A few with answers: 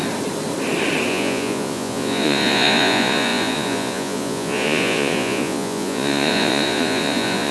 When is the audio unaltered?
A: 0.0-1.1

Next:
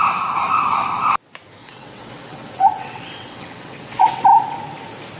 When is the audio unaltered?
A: 0.0-1.6; 4.2-5.2

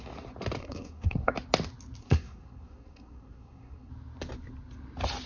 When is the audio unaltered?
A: 0.0-0.6; 1.3-2.0; 3.9-5.3

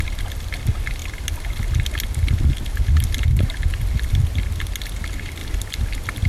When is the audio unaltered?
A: 0.0-6.3

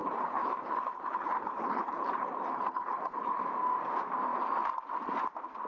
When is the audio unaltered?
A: 3.4-5.7

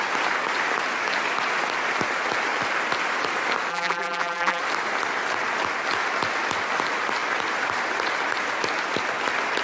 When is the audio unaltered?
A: 0.0-3.7; 4.6-9.6

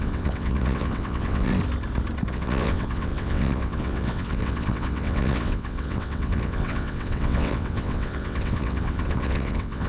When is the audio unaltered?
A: 1.5-2.3

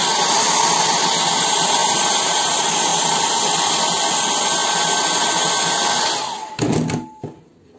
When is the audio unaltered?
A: 0.0-7.8